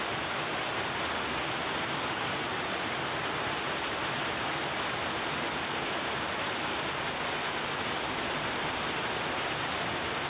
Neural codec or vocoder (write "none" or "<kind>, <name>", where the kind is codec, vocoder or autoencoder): none